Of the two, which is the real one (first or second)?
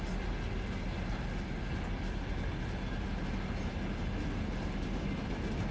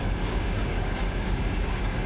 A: first